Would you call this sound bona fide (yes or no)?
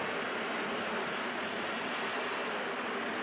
yes